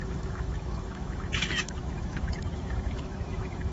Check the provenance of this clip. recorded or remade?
remade